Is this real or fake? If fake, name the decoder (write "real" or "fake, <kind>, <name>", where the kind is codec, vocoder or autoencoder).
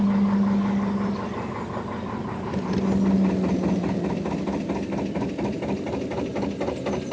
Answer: real